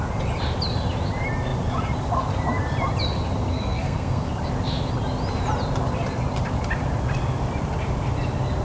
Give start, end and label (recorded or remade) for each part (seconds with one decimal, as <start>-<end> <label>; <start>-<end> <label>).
0.0-3.5 recorded; 3.5-4.3 remade; 4.3-8.6 recorded